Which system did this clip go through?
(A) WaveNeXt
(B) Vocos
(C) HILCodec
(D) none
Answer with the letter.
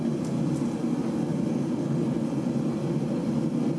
D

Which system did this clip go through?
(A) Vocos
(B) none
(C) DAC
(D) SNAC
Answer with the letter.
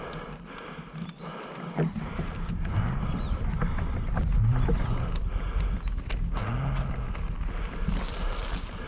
B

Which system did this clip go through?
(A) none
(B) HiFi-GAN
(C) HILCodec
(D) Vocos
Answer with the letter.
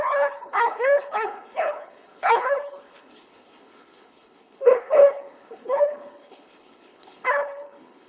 C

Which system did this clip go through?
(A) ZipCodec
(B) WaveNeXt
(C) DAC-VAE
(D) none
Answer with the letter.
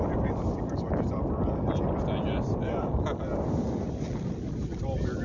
D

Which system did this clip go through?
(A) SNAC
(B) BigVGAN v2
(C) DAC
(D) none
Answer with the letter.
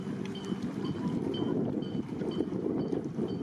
D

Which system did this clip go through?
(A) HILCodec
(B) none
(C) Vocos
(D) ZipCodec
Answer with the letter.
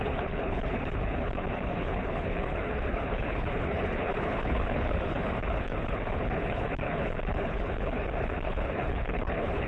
A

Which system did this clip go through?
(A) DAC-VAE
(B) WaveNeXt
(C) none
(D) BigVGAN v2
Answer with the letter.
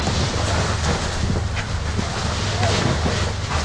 C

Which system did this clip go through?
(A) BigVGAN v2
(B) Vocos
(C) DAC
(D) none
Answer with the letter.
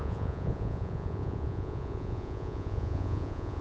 B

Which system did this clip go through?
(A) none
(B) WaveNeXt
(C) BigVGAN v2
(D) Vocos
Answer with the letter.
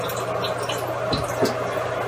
A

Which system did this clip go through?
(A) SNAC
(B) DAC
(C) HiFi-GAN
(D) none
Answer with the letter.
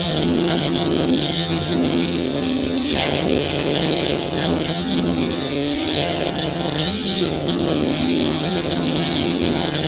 C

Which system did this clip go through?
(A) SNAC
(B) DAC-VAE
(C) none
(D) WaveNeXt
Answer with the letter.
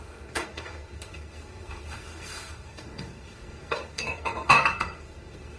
A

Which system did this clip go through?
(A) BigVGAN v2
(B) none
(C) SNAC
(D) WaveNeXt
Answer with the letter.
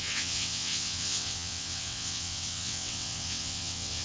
D